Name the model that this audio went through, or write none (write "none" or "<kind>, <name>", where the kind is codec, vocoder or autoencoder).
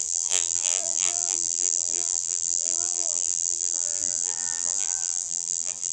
vocoder, BigVGAN v2